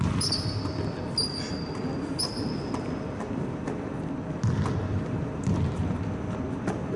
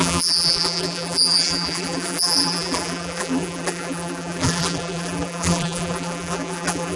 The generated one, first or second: second